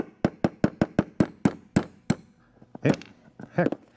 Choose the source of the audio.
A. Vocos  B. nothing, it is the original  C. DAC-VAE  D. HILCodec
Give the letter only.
B